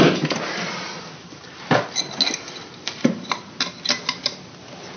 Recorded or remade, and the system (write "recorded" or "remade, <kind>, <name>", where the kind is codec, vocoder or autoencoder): recorded